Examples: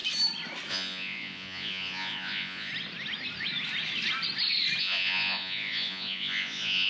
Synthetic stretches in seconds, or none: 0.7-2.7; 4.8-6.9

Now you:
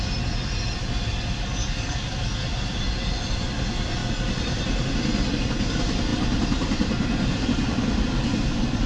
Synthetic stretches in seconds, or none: 1.6-2.3